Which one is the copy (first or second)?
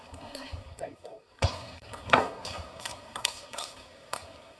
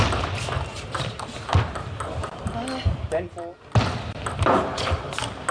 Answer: first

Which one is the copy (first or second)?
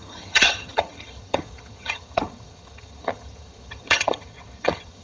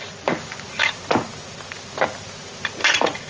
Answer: first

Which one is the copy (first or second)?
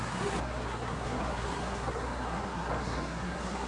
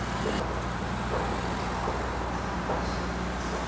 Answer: first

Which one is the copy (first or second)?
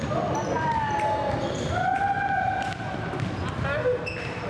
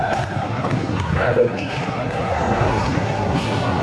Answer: second